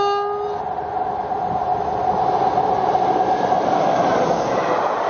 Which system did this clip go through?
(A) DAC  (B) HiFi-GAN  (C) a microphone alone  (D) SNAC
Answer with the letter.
C